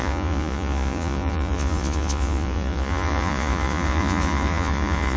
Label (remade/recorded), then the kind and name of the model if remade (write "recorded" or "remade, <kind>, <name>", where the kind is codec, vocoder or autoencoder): remade, vocoder, Vocos